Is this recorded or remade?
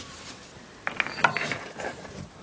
recorded